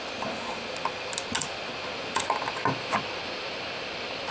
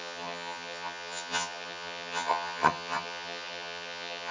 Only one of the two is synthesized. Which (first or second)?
second